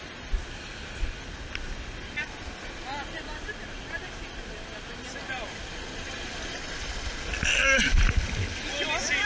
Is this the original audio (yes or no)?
yes